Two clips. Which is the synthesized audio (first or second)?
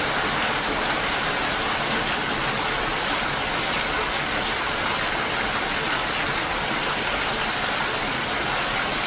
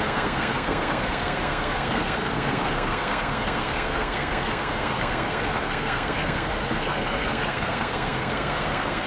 second